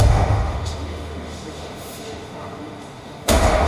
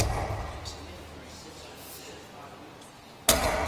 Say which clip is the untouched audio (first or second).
second